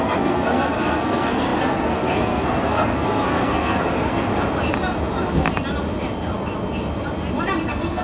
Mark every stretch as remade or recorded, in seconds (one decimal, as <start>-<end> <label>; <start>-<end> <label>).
0.0-4.3 remade; 4.3-7.6 recorded; 7.6-8.0 remade